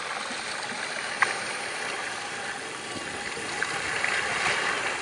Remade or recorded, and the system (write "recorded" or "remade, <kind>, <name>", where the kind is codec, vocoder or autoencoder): recorded